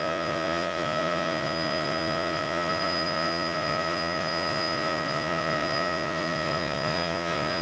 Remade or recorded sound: remade